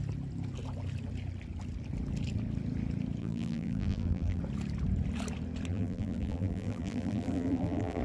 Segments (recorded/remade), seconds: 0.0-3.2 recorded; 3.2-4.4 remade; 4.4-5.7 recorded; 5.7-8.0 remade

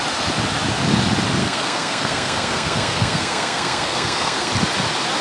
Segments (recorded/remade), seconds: 0.0-1.4 recorded; 1.4-4.5 remade; 4.5-5.2 recorded

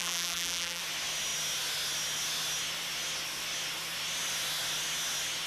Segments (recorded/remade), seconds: 0.0-0.8 remade; 0.8-5.5 recorded

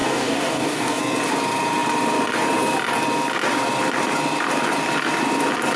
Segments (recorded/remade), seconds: 0.0-1.0 remade; 1.0-5.8 recorded

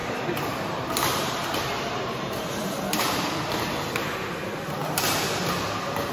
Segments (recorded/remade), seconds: 0.0-3.3 remade; 3.3-6.1 recorded

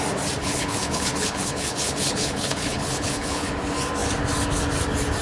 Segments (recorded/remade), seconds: 0.0-0.4 recorded; 0.4-3.5 remade; 3.5-5.2 recorded

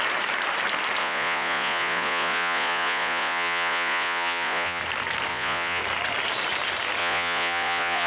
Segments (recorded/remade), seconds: 0.0-1.0 recorded; 1.0-4.8 remade; 4.8-5.3 recorded; 5.3-5.8 remade; 5.8-7.0 recorded; 7.0-8.1 remade

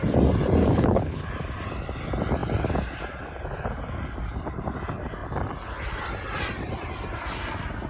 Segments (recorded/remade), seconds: 0.0-0.6 recorded; 0.6-1.3 remade; 1.3-7.9 recorded